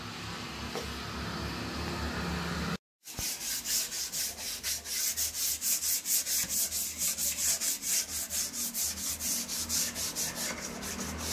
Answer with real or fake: real